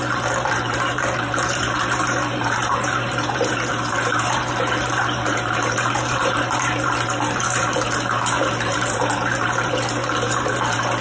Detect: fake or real fake